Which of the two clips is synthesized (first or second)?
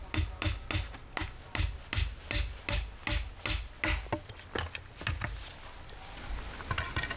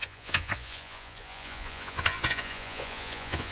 second